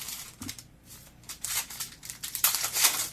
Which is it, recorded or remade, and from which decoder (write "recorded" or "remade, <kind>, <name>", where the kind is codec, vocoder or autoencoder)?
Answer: remade, vocoder, BigVGAN v2